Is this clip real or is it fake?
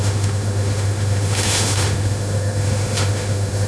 fake